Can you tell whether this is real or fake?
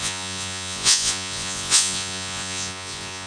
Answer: fake